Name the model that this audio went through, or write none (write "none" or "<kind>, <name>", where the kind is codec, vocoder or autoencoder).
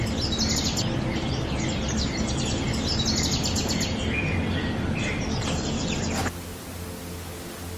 none